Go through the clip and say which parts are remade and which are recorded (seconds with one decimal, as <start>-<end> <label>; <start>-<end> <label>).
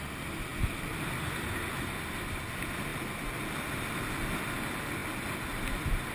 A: 0.0-6.1 recorded